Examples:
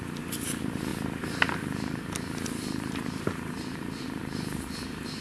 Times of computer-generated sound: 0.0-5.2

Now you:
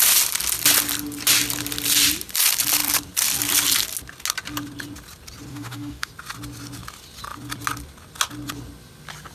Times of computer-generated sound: 5.5-6.1

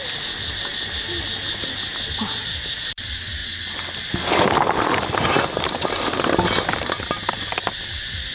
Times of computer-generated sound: none